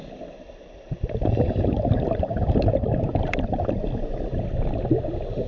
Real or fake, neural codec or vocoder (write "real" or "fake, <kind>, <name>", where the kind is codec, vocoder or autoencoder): real